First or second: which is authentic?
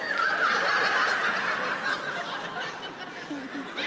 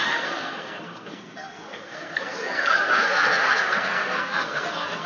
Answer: first